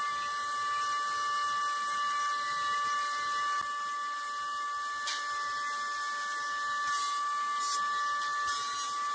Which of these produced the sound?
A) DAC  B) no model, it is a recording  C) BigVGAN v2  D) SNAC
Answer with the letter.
B